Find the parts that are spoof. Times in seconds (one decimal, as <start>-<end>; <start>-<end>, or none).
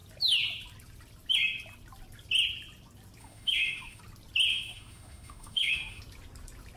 3.2-4.0; 4.5-6.0